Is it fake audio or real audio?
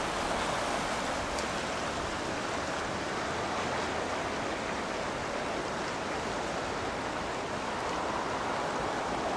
real